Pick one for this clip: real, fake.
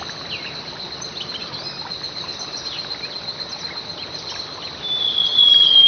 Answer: real